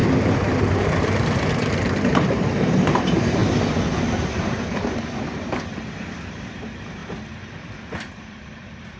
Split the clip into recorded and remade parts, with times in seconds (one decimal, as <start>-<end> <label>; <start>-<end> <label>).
0.0-0.8 recorded; 0.8-3.4 remade; 3.4-4.0 recorded; 4.0-7.0 remade; 7.0-8.1 recorded; 8.1-9.0 remade